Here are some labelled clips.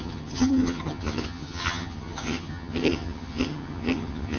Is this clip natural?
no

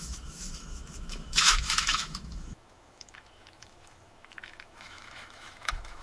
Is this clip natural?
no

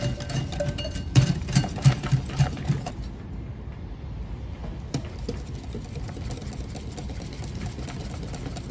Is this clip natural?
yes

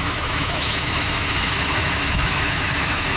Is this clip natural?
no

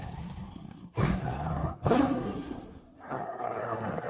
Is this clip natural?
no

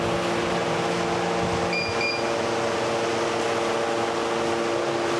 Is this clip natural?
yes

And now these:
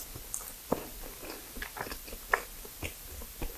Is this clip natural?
yes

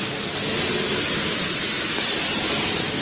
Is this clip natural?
yes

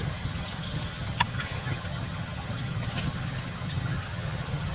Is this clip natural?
no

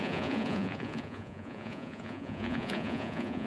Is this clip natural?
no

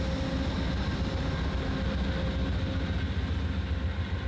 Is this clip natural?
yes